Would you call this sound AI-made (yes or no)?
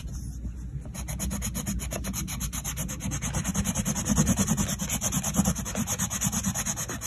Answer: no